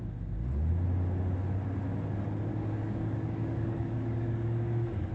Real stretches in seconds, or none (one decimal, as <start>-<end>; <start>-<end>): 0.0-2.5